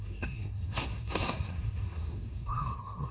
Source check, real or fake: fake